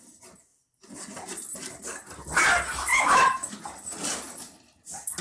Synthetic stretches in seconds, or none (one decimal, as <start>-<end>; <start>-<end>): 2.9-3.6